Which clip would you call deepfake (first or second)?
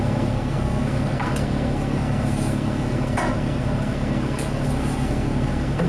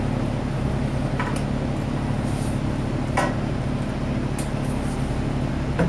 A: first